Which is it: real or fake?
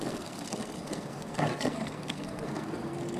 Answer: fake